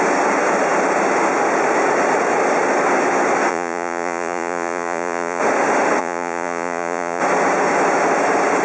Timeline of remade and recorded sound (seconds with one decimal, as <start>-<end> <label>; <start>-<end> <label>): 0.0-3.5 recorded; 3.5-5.4 remade; 5.4-6.0 recorded; 6.0-7.2 remade; 7.2-8.6 recorded